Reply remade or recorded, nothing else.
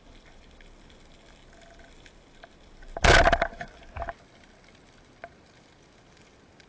recorded